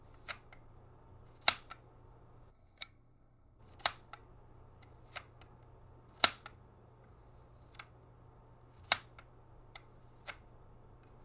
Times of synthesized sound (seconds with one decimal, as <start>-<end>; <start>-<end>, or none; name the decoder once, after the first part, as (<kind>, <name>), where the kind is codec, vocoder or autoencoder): 2.5-3.6 (codec, SNAC)